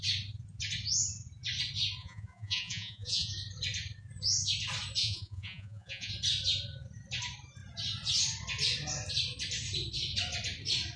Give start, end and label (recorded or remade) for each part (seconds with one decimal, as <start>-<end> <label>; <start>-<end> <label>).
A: 0.0-2.0 recorded; 2.0-3.3 remade; 3.3-5.0 recorded; 5.0-6.1 remade; 6.1-11.0 recorded